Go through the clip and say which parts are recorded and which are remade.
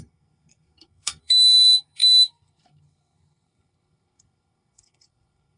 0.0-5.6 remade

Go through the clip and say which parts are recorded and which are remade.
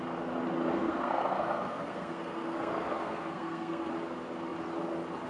0.0-0.7 recorded; 0.7-3.9 remade; 3.9-5.3 recorded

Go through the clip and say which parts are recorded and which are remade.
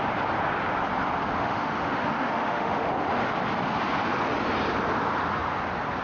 0.0-1.4 recorded; 1.4-2.9 remade; 2.9-6.0 recorded